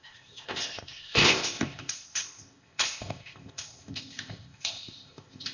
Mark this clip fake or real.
fake